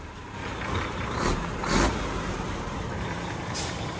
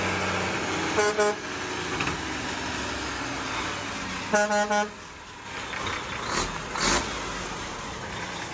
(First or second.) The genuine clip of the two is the second